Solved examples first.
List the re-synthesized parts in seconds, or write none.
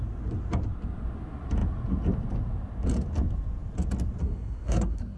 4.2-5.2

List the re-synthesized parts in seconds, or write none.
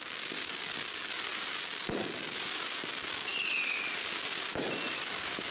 none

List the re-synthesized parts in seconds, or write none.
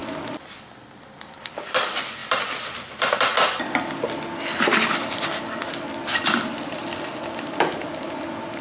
6.1-6.9